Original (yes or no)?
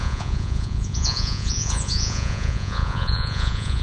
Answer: no